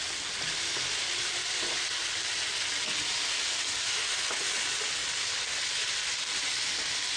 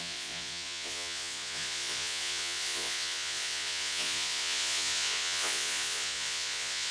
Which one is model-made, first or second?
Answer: second